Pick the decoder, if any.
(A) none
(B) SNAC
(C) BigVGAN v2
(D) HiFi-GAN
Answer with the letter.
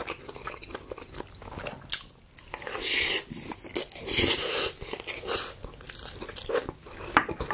A